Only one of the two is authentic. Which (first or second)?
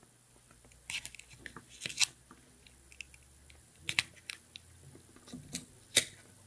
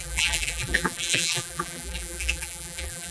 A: first